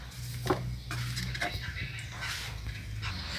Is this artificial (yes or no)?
no